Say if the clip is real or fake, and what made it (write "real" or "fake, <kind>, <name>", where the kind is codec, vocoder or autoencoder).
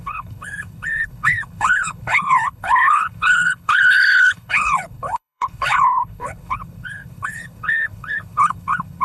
fake, codec, HILCodec